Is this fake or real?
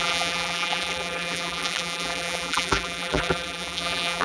fake